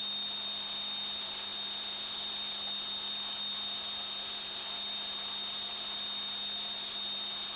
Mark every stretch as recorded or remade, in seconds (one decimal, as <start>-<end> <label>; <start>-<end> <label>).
0.0-7.6 recorded